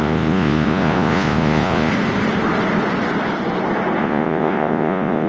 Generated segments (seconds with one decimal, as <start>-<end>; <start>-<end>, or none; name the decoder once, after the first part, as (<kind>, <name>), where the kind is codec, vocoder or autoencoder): 0.0-1.9 (vocoder, Vocos); 4.0-5.3